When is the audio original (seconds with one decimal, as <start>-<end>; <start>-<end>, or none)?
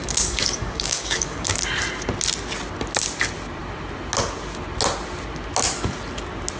1.6-6.6